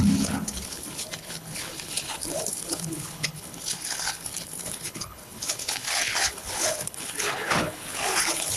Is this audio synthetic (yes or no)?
yes